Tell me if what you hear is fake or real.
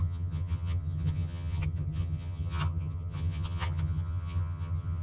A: fake